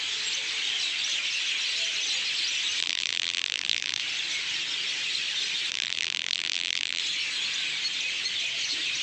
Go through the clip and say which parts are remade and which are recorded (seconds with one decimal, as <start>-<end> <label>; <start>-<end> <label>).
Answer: 0.0-2.8 recorded; 2.8-4.0 remade; 4.0-5.7 recorded; 5.7-7.0 remade; 7.0-9.0 recorded